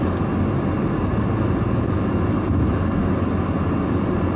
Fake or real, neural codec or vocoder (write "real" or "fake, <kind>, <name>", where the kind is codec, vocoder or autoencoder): real